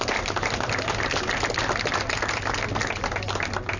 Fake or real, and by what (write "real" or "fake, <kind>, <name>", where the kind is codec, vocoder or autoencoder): real